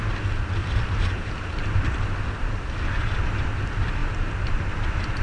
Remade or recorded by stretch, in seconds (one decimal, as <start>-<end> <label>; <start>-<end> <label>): 0.0-0.6 recorded; 0.6-1.9 remade; 1.9-4.0 recorded; 4.0-4.7 remade; 4.7-5.2 recorded